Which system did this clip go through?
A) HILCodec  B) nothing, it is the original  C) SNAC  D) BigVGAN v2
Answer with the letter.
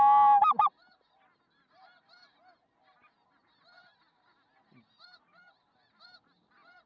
B